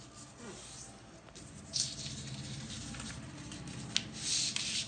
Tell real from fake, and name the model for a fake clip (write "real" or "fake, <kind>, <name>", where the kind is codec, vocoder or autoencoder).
real